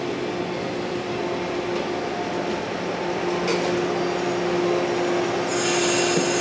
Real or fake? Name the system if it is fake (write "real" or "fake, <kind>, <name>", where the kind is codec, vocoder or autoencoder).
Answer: real